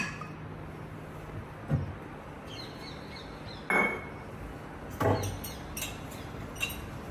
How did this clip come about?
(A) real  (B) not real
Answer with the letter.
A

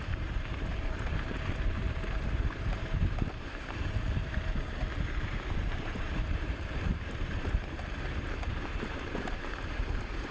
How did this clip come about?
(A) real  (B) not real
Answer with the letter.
B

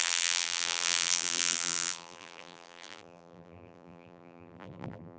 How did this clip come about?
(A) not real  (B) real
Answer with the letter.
A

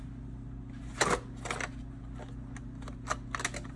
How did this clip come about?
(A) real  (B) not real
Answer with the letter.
A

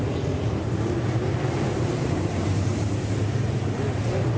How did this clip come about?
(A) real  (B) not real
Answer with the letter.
B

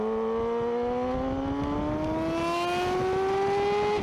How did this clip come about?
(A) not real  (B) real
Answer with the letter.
B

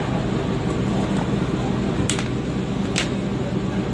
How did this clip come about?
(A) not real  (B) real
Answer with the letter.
B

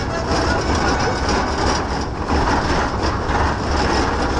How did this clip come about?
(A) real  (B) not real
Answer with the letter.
A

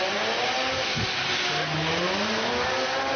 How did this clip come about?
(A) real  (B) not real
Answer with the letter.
A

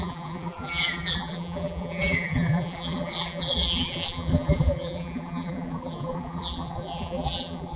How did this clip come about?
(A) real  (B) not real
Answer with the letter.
B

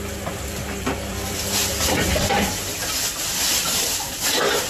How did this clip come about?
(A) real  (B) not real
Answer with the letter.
B